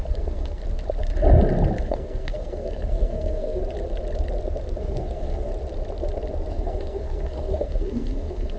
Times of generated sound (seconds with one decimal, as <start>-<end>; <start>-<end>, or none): 0.0-0.6; 1.8-3.6; 4.8-5.5; 6.5-8.6